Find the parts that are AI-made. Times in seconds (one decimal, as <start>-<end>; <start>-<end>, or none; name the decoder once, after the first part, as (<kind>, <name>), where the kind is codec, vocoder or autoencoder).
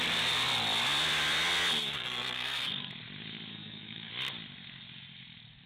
1.8-2.9 (codec, SNAC); 3.5-4.1